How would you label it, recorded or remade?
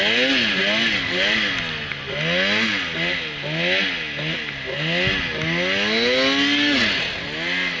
recorded